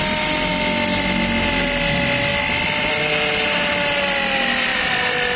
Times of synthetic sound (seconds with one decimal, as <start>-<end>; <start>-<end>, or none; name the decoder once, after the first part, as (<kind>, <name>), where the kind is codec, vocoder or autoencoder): 2.3-3.0 (vocoder, BigVGAN v2); 4.7-5.4